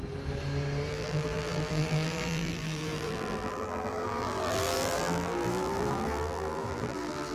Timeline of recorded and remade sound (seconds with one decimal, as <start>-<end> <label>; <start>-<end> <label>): 0.0-0.9 recorded; 0.9-7.3 remade